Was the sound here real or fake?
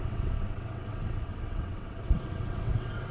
fake